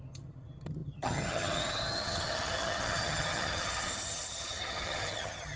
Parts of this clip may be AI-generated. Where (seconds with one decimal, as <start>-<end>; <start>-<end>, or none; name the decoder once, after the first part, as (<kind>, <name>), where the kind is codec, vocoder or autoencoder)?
0.0-5.6 (vocoder, HiFi-GAN)